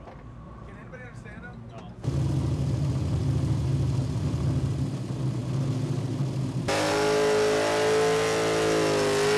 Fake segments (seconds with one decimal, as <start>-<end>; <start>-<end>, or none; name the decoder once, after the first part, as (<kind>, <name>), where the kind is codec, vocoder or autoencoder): none